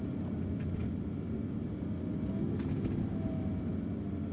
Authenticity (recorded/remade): recorded